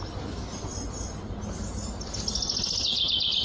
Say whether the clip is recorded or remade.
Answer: recorded